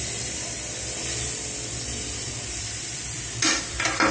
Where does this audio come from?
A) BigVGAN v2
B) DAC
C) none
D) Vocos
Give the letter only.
A